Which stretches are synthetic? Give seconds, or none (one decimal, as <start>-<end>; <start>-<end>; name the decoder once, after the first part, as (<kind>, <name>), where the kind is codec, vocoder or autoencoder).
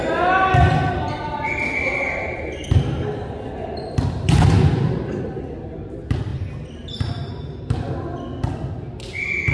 6.3-7.6 (vocoder, BigVGAN v2)